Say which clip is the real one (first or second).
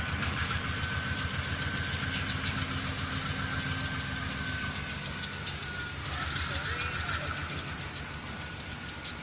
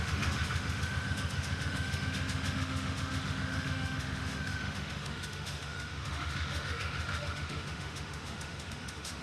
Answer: first